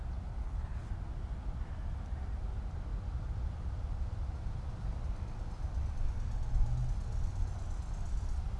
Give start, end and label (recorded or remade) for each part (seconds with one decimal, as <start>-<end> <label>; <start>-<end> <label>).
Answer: 0.0-0.4 recorded; 0.4-0.9 remade; 0.9-8.6 recorded